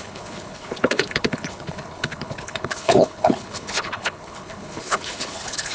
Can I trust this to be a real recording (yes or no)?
no